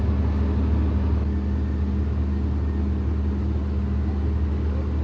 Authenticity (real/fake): real